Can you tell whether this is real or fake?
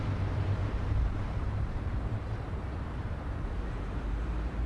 fake